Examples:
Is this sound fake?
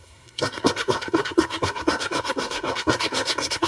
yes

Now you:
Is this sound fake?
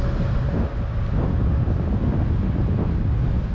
no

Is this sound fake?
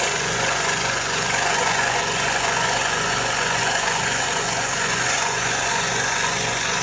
yes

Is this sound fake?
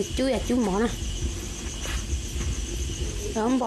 no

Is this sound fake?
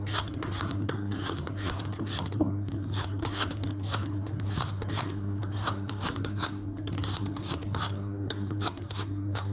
yes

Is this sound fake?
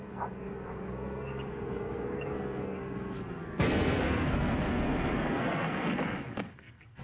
yes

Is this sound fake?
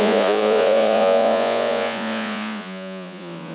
yes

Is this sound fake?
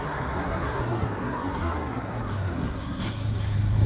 yes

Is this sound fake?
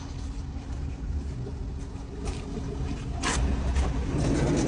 no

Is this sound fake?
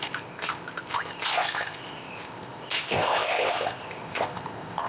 yes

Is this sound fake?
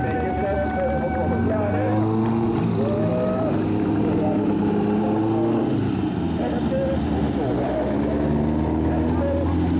no